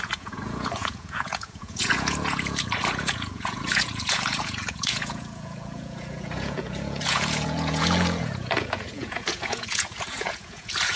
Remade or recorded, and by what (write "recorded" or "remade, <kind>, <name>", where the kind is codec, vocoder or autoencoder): remade, vocoder, Vocos